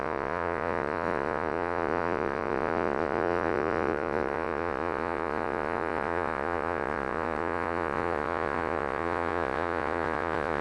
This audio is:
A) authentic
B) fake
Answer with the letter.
B